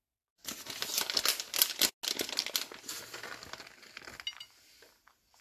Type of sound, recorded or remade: recorded